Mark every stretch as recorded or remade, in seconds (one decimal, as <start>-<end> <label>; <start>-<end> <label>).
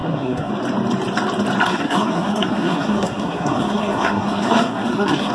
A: 0.0-0.5 remade; 0.5-1.7 recorded; 1.7-5.3 remade